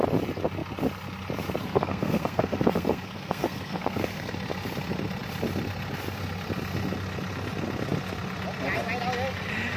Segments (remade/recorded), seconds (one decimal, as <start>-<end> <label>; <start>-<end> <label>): 0.0-1.6 recorded; 1.6-4.3 remade; 4.3-9.8 recorded